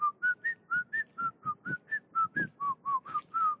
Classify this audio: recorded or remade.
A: recorded